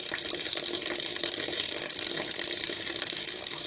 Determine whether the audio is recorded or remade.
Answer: remade